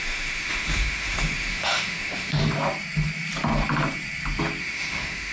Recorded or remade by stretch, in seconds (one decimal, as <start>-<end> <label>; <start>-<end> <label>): 0.0-2.4 remade; 2.4-4.6 recorded; 4.6-5.3 remade